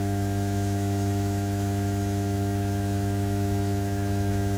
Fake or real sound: fake